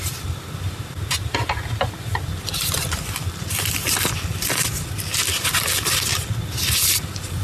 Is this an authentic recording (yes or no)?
no